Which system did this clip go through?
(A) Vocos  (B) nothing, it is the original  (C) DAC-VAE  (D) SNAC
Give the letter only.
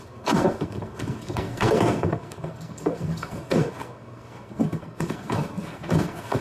D